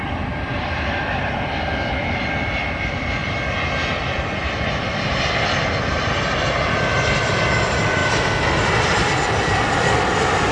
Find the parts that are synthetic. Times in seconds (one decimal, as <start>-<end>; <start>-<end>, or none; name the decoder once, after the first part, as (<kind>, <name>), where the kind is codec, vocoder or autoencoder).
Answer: 0.0-3.2 (vocoder, BigVGAN v2); 4.0-8.0; 9.4-10.5